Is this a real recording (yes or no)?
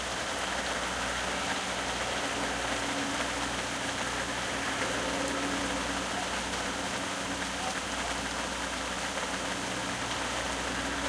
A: yes